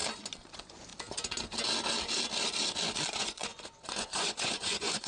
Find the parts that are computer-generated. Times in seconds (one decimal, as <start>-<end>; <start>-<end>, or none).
0.5-0.9; 3.1-5.1